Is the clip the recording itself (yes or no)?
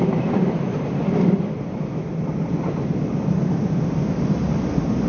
yes